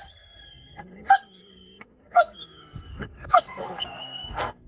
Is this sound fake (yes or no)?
yes